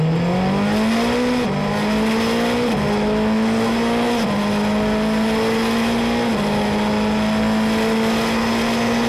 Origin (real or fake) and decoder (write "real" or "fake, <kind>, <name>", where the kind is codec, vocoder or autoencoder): real